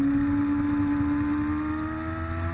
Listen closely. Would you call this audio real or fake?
real